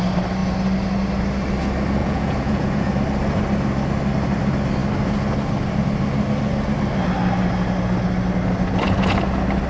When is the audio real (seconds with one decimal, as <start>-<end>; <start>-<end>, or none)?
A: 0.0-2.0; 2.9-9.7